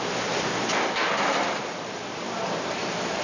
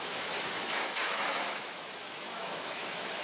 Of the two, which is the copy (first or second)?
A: second